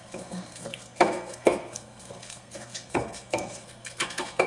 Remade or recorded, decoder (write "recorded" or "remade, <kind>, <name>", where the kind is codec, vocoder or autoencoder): remade, codec, SNAC